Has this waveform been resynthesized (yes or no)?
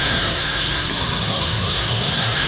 yes